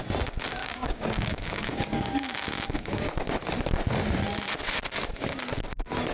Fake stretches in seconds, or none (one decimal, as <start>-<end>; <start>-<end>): 0.6-3.0